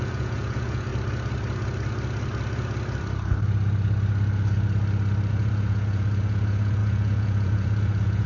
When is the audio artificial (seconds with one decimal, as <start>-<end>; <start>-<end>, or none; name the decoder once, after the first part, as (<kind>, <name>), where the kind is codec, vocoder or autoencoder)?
0.0-0.9 (vocoder, Vocos); 5.3-8.3